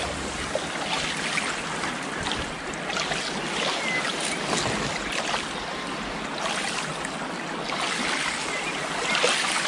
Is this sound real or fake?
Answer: real